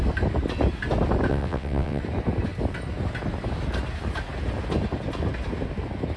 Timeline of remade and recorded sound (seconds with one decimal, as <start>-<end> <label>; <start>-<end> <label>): 0.0-1.3 recorded; 1.3-2.0 remade; 2.0-6.2 recorded